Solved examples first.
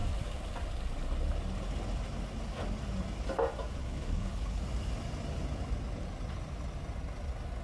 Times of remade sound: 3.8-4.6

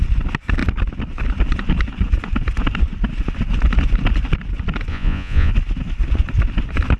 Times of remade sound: 4.9-5.5

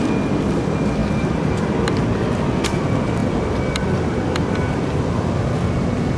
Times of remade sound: none

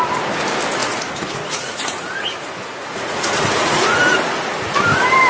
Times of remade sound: 0.8-4.0

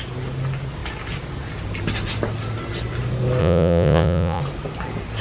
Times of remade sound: 3.4-4.4

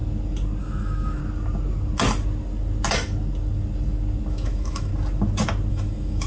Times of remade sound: 0.6-1.2; 4.3-4.9; 5.7-6.3

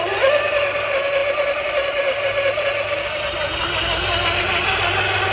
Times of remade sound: none